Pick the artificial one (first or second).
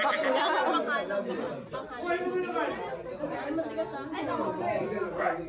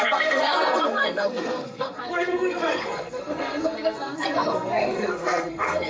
second